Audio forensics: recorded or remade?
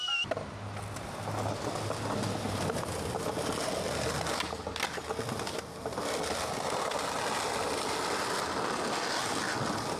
recorded